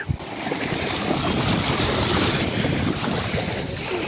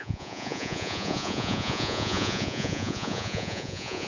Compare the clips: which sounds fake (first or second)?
second